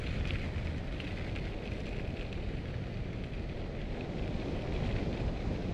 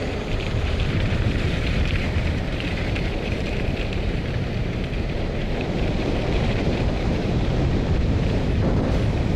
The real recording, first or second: first